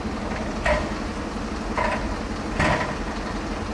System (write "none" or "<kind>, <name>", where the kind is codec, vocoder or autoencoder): none